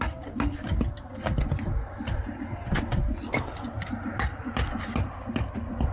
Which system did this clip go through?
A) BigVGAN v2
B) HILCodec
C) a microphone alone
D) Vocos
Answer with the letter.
C